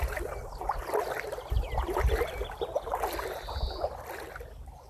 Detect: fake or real real